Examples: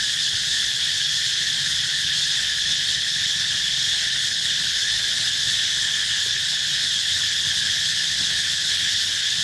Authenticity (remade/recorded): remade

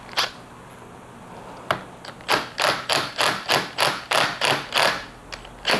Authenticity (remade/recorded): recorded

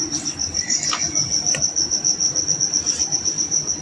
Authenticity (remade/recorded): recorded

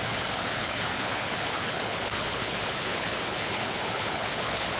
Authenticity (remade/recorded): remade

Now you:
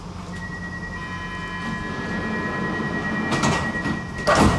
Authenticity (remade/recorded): recorded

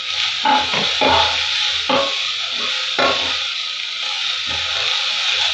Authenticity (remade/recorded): recorded